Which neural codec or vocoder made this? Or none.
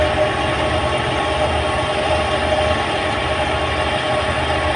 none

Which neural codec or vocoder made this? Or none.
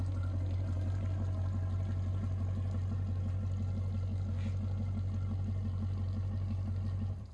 none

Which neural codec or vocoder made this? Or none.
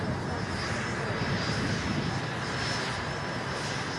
none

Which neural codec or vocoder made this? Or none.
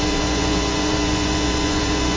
vocoder, Vocos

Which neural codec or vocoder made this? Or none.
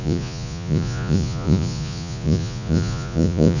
vocoder, Vocos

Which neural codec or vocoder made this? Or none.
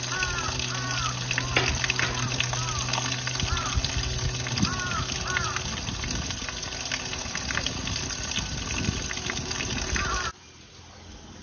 none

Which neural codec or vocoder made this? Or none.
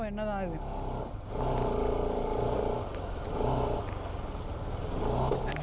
none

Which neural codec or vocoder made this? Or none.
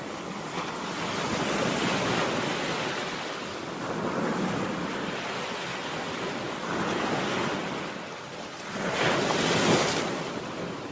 none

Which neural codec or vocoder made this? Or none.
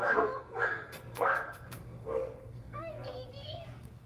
codec, SNAC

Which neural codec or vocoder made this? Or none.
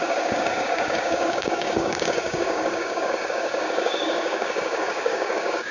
codec, DAC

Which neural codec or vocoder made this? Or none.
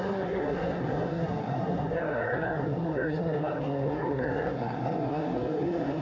codec, SNAC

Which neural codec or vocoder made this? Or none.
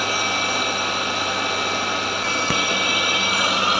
none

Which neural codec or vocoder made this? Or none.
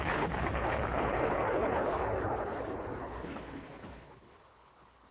codec, HILCodec